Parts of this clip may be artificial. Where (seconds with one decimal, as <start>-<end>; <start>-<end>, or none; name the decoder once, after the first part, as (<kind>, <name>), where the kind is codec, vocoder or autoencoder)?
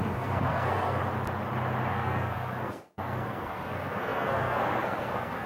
0.0-1.0 (codec, SNAC); 1.9-5.5